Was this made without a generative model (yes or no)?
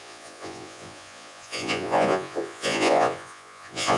no